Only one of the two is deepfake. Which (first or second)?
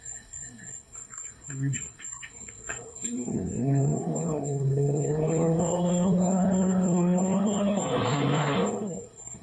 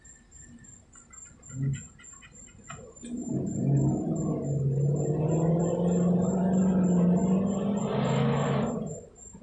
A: first